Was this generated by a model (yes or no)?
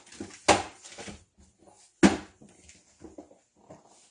no